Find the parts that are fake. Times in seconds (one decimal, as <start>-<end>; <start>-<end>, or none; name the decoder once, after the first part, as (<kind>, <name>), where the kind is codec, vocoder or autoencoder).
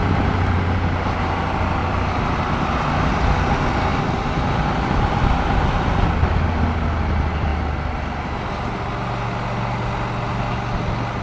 1.8-2.7 (vocoder, BigVGAN v2); 3.9-5.9